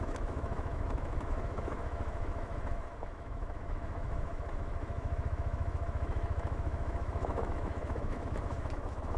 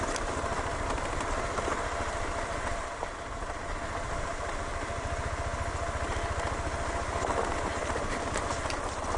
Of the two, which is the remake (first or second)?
first